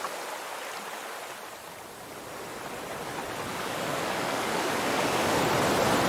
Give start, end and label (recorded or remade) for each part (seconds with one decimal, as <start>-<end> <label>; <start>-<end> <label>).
0.0-3.5 recorded; 3.5-5.4 remade; 5.4-6.1 recorded